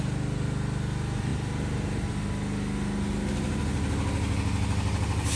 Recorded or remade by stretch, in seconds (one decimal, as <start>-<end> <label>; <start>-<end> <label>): 0.0-5.4 recorded